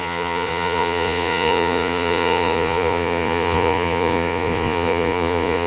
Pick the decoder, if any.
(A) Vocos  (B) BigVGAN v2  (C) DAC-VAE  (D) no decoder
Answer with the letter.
A